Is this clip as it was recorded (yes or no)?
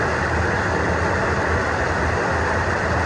yes